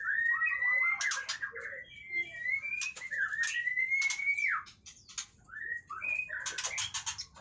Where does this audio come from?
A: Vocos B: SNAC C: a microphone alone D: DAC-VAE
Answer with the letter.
C